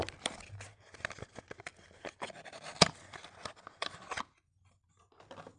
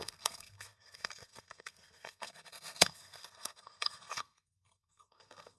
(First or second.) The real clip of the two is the first